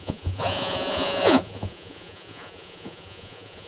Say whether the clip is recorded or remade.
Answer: remade